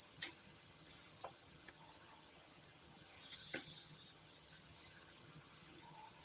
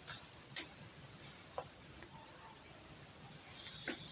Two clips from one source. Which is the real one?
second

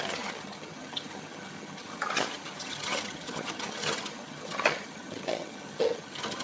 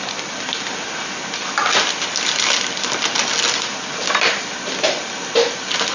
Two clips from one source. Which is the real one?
second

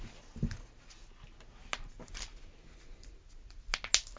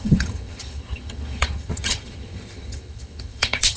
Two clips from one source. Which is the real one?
first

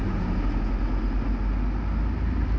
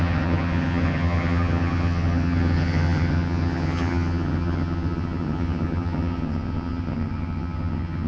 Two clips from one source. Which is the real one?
first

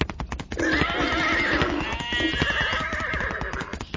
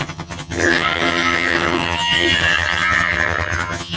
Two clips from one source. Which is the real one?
first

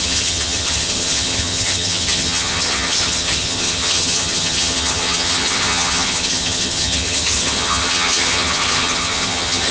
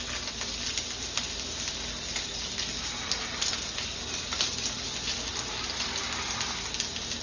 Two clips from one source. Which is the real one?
second